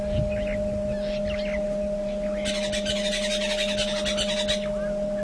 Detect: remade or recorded recorded